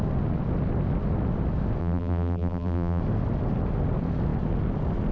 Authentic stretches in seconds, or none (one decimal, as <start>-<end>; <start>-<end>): 0.0-1.8; 3.0-5.1

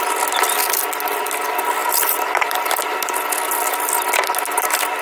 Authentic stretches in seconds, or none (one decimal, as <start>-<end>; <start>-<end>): 0.0-1.8; 3.3-5.0